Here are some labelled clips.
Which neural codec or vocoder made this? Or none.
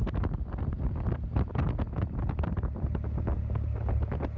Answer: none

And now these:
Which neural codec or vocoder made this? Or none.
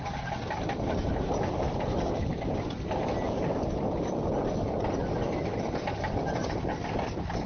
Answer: none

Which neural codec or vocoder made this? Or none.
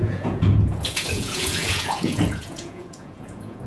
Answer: vocoder, Vocos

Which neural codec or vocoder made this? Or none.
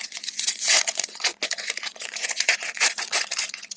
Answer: vocoder, Vocos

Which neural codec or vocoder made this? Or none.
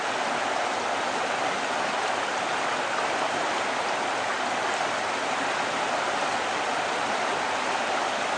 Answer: none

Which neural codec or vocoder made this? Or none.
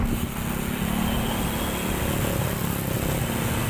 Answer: none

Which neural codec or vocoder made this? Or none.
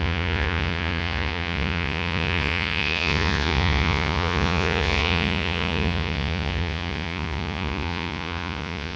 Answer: vocoder, Vocos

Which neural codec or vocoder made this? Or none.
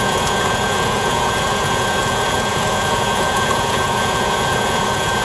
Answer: vocoder, Vocos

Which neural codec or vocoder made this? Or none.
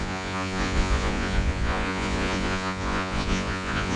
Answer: vocoder, Vocos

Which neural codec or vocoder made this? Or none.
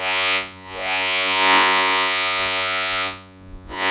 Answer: vocoder, Vocos